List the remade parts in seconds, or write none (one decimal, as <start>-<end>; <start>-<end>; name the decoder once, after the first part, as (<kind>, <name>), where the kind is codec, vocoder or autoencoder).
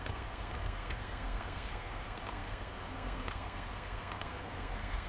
0.0-5.1 (codec, SNAC)